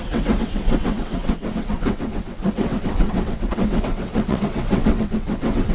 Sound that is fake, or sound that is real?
fake